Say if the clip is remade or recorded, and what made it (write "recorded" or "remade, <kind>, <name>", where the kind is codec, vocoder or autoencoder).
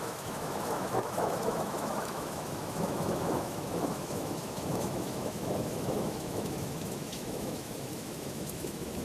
remade, autoencoder, DAC-VAE